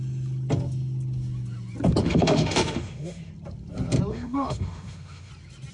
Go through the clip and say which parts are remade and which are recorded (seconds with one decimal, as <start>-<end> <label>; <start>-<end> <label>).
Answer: 0.0-2.0 recorded; 2.0-3.3 remade; 3.3-4.1 recorded; 4.1-5.3 remade; 5.3-5.7 recorded